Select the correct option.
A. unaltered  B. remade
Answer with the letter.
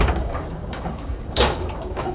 B